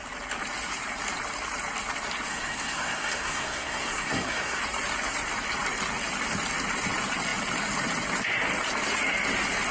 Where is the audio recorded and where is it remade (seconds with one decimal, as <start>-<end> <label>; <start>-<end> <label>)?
0.0-2.3 recorded; 2.3-4.6 remade; 4.6-9.7 recorded